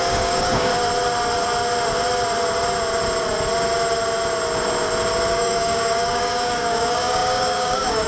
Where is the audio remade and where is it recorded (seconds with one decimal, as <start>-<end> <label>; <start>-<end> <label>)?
0.0-0.7 remade; 0.7-5.3 recorded; 5.3-8.1 remade

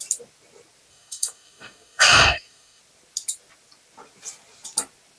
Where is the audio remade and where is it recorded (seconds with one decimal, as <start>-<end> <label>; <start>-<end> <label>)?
0.0-0.9 recorded; 0.9-2.8 remade; 2.8-5.2 recorded

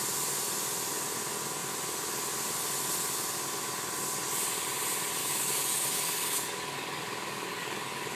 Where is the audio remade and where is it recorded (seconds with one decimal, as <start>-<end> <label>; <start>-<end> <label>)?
0.0-5.2 recorded; 5.2-8.2 remade

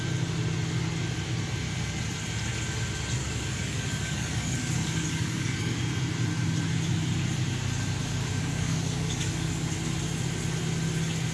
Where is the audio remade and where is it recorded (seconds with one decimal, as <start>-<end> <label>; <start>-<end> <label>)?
0.0-3.2 recorded; 3.2-5.8 remade; 5.8-8.0 recorded; 8.0-9.7 remade; 9.7-11.3 recorded

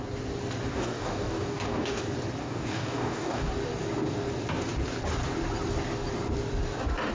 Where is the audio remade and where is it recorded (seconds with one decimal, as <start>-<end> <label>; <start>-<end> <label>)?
0.0-0.7 recorded; 0.7-2.0 remade; 2.0-2.4 recorded; 2.4-3.5 remade; 3.5-7.1 recorded

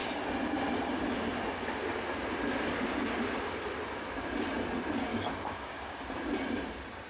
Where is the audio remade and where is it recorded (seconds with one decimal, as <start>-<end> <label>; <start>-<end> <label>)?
0.0-5.1 recorded; 5.1-6.0 remade; 6.0-7.1 recorded